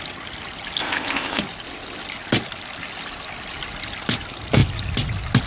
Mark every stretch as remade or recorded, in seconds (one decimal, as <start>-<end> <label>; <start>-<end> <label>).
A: 0.0-0.8 recorded; 0.8-1.4 remade; 1.4-5.5 recorded